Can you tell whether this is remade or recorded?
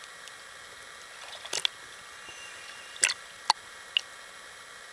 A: recorded